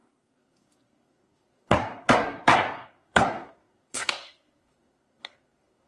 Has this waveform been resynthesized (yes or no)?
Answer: yes